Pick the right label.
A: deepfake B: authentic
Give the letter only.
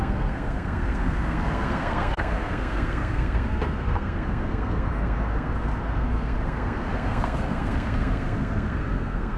A